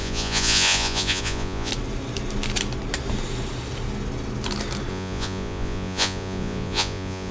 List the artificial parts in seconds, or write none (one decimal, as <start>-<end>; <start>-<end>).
0.0-1.7; 4.9-7.3